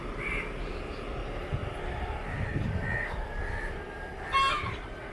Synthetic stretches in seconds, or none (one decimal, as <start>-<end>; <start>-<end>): none